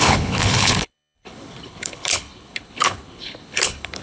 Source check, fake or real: fake